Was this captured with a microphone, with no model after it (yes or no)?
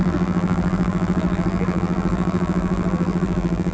no